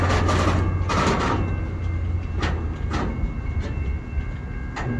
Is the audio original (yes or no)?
yes